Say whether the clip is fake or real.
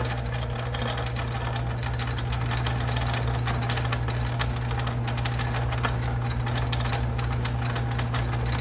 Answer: real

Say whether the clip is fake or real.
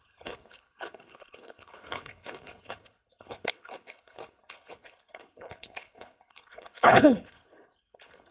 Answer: fake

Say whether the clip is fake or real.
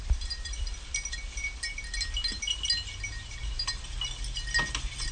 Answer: real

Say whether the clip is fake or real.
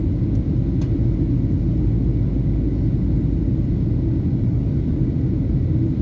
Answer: real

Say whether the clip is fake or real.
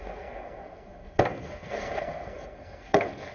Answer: fake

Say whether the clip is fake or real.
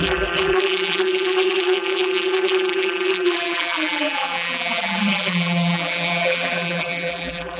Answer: fake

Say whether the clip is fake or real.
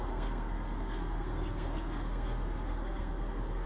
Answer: fake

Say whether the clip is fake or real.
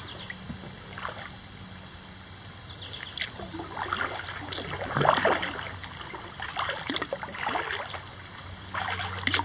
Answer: real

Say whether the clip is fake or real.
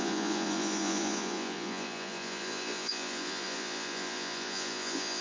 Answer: fake